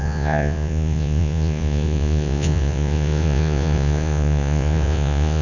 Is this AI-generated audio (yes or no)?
yes